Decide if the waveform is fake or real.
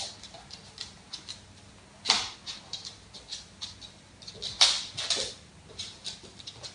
real